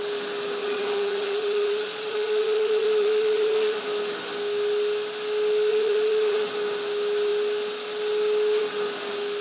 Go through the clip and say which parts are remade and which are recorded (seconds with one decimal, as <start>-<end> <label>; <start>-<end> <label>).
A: 0.0-0.6 recorded; 0.6-3.8 remade; 3.8-5.7 recorded; 5.7-6.5 remade; 6.5-9.4 recorded